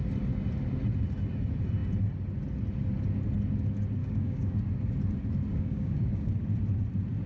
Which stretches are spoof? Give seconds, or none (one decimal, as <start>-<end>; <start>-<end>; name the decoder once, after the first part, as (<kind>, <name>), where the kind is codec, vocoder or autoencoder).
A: 4.0-4.6 (codec, DAC); 5.5-6.3

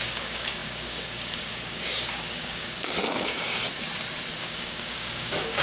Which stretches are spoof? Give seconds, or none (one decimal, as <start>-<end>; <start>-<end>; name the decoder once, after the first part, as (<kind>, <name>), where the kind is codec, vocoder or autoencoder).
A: 0.0-3.6 (codec, DAC); 4.4-5.6

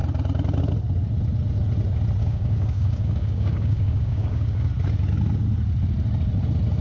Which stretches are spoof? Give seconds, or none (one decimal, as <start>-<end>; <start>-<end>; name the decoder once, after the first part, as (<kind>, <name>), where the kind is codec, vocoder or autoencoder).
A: 2.2-4.7 (codec, DAC)

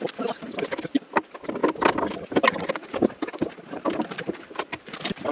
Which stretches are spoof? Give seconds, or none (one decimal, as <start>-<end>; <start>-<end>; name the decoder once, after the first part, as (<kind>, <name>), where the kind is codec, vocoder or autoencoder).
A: none

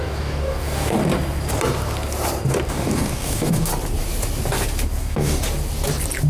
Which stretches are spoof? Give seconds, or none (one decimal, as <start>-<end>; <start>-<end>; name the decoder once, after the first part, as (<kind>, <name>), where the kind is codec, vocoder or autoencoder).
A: 0.0-1.0 (codec, DAC); 2.7-3.7; 5.0-5.4

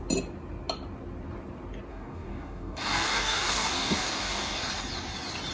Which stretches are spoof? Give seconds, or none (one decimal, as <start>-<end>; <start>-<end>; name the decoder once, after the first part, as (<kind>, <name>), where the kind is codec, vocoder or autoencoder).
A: 1.9-4.7 (codec, DAC)

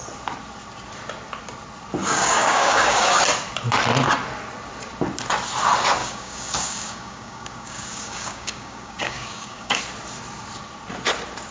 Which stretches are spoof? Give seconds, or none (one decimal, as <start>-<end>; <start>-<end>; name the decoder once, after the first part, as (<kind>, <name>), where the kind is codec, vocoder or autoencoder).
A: 2.0-3.2 (codec, DAC); 6.0-9.8